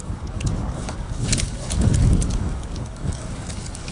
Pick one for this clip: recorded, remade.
remade